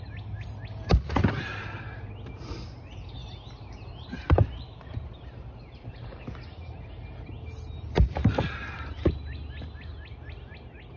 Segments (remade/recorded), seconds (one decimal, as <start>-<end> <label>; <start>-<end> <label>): 0.0-3.2 recorded; 3.2-6.2 remade; 6.2-11.0 recorded